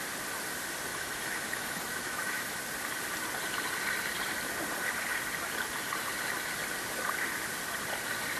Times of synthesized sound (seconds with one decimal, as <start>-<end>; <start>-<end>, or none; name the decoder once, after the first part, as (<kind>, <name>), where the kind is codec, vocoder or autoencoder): 0.9-2.6 (autoencoder, DAC-VAE)